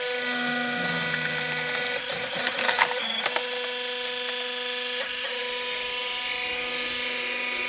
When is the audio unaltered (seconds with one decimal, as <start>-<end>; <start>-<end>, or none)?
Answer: 0.0-7.7